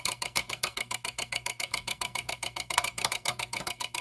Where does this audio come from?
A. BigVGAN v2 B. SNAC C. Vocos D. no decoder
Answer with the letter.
B